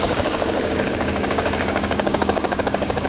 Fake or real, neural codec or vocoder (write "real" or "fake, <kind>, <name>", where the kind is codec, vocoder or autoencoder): fake, codec, DAC